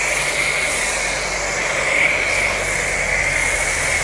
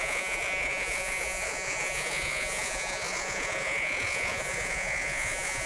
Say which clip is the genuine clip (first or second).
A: first